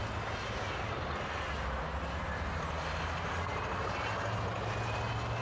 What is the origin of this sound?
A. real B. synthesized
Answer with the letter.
A